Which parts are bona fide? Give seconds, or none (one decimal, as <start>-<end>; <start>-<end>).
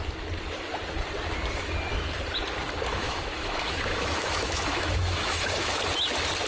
0.0-2.9; 5.8-6.5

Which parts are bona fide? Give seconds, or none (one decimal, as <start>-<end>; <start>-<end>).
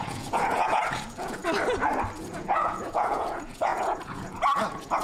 1.4-2.3